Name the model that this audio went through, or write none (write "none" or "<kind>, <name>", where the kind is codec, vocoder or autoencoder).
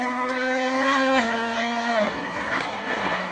codec, SNAC